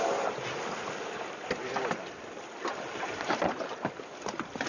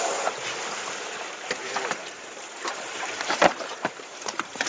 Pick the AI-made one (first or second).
second